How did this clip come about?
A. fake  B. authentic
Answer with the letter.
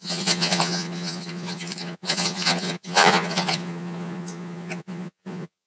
A